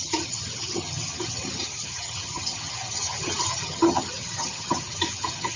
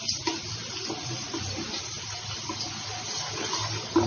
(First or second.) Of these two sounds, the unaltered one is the second